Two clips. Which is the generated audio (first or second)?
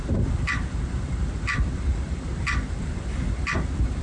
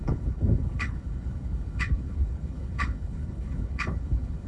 second